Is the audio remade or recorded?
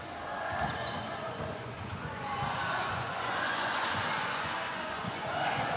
remade